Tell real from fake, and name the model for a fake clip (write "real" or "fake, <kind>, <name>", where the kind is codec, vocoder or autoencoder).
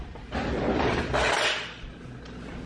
real